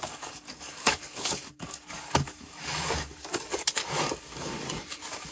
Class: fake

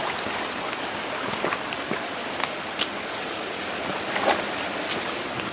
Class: real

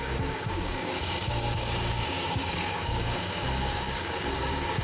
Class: fake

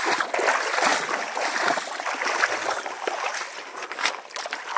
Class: real